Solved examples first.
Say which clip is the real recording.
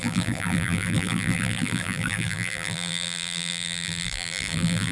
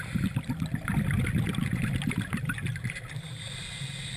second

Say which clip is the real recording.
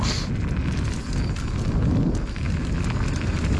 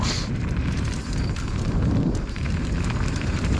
first